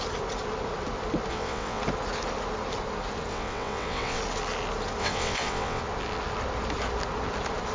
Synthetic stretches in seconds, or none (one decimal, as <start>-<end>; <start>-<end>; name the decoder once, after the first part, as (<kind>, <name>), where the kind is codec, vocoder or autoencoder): 1.3-1.8 (vocoder, WaveNeXt); 3.3-4.2; 5.0-5.8